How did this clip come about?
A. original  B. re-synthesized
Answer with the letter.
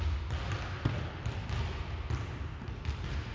A